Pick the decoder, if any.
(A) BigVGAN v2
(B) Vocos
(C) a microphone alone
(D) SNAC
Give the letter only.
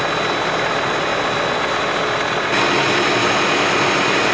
C